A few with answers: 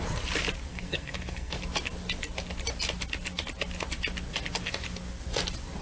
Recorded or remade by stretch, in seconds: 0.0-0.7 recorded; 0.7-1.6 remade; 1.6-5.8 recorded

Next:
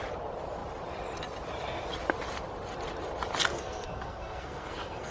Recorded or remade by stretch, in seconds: 0.0-3.5 recorded; 3.5-5.1 remade

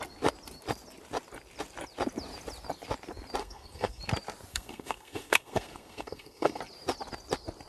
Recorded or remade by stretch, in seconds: 0.0-3.4 recorded; 3.4-4.0 remade; 4.0-4.5 recorded; 4.5-6.6 remade; 6.6-7.7 recorded

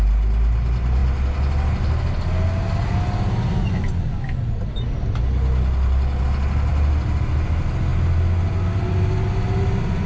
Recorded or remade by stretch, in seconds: 0.0-10.1 recorded

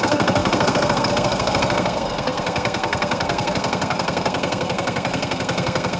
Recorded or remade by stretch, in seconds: 0.0-6.0 remade

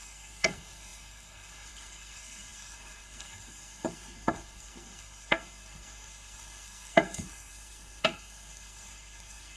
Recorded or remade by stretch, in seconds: 0.0-9.6 remade

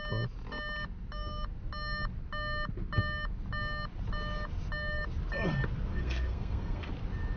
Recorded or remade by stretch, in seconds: 0.0-5.9 recorded; 5.9-6.9 remade; 6.9-7.4 recorded

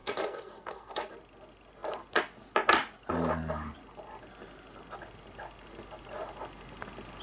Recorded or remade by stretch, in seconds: 0.0-1.1 remade; 1.1-7.2 recorded